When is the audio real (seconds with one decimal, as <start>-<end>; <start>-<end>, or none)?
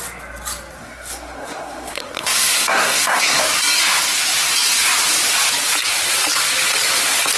0.0-0.8; 3.4-7.4